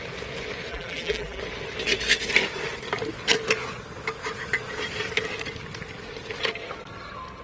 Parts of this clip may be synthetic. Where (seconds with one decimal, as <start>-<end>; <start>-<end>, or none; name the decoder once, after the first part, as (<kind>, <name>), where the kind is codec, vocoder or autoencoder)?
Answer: 0.7-1.4 (vocoder, BigVGAN v2)